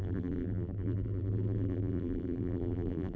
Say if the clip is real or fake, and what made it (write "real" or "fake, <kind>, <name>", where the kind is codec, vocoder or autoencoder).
fake, vocoder, BigVGAN v2